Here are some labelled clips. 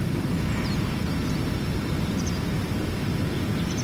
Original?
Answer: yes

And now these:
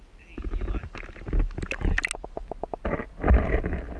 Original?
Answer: yes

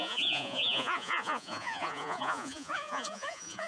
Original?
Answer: no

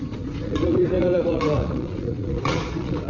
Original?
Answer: no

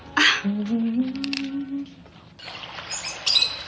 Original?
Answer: yes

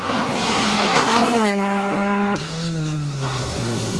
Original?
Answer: no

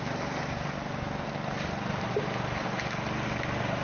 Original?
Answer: yes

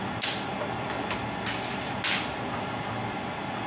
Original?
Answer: yes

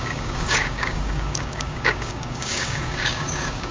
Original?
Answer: no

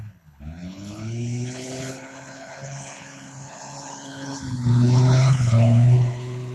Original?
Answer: no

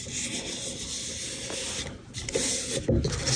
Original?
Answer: yes